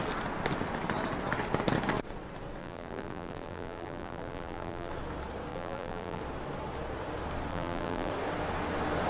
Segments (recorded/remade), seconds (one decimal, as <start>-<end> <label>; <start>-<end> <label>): 0.0-2.6 recorded; 2.6-4.9 remade; 4.9-5.5 recorded; 5.5-6.2 remade; 6.2-7.5 recorded; 7.5-8.1 remade; 8.1-9.1 recorded